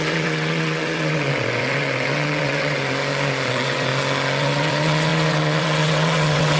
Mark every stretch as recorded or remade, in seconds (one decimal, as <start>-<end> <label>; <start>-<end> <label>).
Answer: 0.0-2.8 remade; 2.8-3.5 recorded; 3.5-3.9 remade; 3.9-4.4 recorded; 4.4-6.6 remade